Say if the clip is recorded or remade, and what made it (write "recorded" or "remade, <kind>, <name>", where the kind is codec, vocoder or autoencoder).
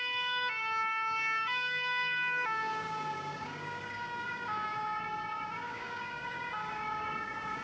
remade, codec, DAC